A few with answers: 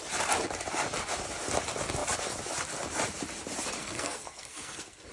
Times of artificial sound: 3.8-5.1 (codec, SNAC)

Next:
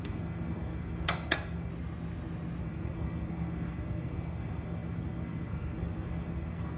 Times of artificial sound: 0.0-1.7 (codec, SNAC); 2.6-6.8

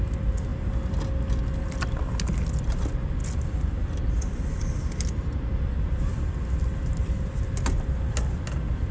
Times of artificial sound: none